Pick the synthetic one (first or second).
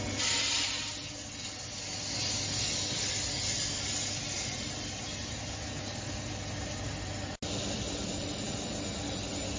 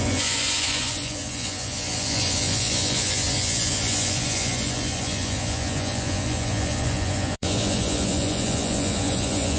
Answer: second